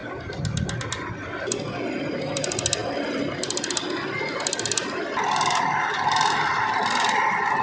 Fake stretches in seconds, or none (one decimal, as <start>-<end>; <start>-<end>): none